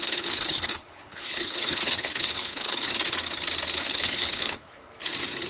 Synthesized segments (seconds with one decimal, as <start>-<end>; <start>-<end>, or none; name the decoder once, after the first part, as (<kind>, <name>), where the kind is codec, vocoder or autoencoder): 0.0-2.9 (codec, HILCodec); 3.8-4.9